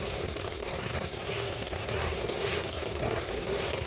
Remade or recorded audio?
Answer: remade